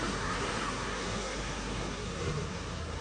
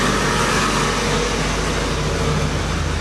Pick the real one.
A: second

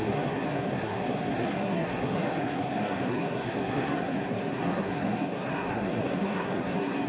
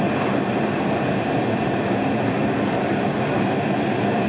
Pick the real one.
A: second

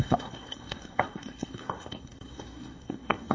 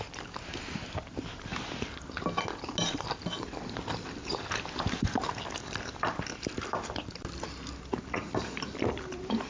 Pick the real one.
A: second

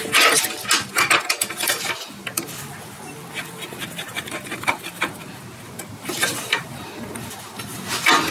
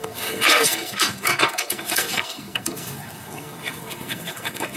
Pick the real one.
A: first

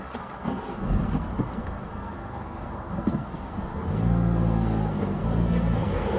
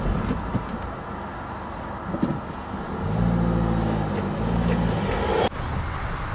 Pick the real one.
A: second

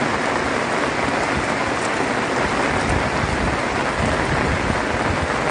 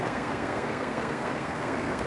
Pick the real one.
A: first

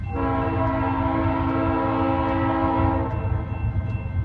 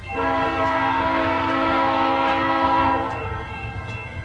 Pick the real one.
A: first